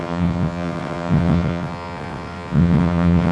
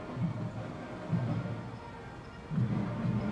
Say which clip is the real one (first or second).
second